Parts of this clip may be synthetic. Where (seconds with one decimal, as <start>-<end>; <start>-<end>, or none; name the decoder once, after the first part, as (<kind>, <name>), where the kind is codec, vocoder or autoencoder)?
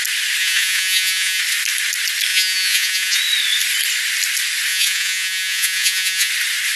0.4-1.4 (vocoder, Vocos); 2.3-3.2; 4.7-6.3